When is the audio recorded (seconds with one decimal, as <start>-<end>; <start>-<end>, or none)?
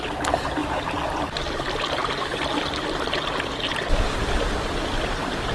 0.0-5.5